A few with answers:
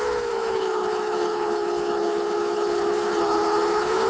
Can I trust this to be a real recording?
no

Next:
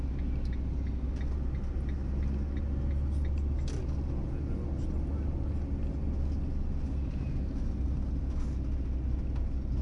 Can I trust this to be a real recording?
yes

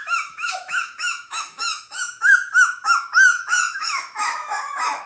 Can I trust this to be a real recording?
no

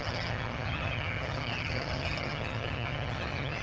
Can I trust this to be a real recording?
no